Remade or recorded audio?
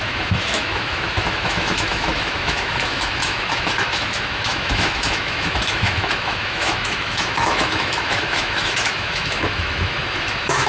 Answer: remade